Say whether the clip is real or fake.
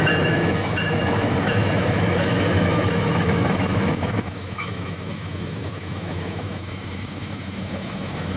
fake